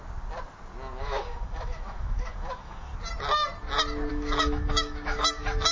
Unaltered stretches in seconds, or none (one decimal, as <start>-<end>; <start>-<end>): 0.0-1.0; 2.9-4.1